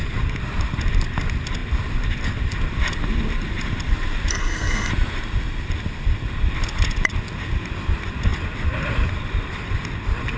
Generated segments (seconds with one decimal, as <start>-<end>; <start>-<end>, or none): 4.3-4.9